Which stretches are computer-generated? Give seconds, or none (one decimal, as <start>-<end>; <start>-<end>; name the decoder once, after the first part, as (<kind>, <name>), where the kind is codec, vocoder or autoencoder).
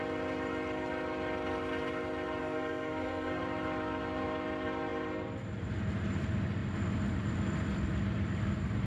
2.4-3.4 (codec, SNAC)